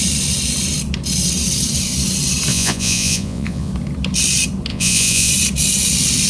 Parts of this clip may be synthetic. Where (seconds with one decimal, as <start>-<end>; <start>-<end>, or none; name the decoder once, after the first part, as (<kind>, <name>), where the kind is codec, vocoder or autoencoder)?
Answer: 2.5-3.7 (vocoder, Vocos); 4.7-5.3